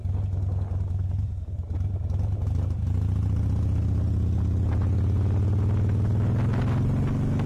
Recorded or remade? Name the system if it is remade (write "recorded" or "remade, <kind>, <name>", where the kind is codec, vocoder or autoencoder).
recorded